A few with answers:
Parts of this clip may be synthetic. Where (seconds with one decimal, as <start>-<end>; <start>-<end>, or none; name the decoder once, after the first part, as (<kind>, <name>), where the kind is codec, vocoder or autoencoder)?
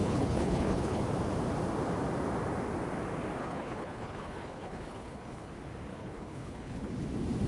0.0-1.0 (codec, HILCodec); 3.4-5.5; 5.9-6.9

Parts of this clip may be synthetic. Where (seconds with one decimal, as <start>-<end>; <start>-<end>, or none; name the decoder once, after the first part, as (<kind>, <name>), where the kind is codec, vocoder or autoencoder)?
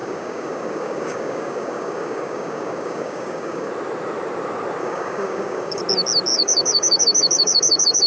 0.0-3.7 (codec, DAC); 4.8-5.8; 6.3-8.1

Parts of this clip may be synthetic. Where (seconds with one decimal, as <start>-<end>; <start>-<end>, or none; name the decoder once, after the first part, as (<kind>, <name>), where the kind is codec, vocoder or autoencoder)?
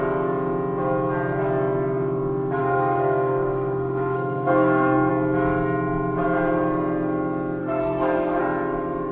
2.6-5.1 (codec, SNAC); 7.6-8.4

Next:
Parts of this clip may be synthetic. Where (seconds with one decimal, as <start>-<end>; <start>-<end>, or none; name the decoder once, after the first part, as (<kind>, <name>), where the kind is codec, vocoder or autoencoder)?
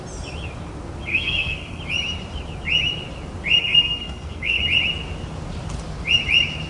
1.1-1.8 (codec, SNAC); 3.6-4.6